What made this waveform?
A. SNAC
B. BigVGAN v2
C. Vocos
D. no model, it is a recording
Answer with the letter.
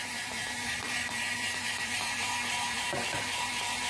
B